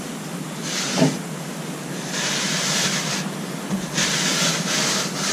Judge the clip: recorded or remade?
remade